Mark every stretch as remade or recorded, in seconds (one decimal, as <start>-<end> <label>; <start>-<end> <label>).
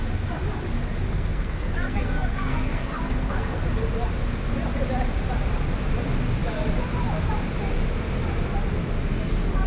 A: 0.0-1.1 recorded; 1.1-3.6 remade; 3.6-9.7 recorded